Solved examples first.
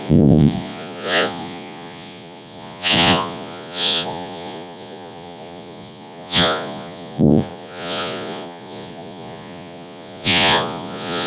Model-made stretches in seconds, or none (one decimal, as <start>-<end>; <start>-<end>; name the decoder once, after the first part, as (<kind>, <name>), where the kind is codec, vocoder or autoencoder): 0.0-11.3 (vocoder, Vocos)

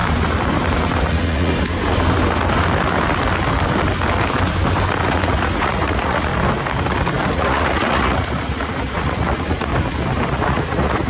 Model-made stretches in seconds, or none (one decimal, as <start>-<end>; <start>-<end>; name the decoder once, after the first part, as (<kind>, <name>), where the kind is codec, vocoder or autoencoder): 1.0-1.5 (vocoder, Vocos); 5.0-6.3; 7.3-9.7; 10.3-11.1

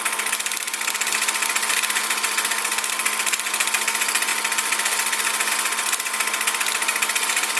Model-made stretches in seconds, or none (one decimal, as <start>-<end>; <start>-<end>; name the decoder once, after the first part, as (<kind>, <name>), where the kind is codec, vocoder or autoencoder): none

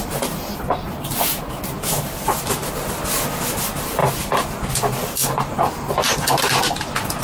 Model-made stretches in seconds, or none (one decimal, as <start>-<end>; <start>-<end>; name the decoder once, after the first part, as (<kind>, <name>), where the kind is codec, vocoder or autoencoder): none

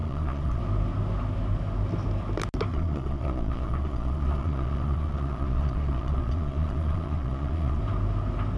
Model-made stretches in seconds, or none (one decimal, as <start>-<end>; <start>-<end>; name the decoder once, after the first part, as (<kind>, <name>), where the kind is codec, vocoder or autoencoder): 0.0-0.6 (vocoder, Vocos); 2.7-7.8